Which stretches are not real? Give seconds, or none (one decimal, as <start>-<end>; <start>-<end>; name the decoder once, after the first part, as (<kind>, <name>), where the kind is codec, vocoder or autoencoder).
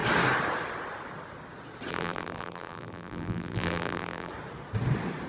1.9-4.3 (vocoder, BigVGAN v2)